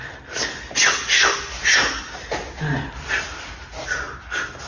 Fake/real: real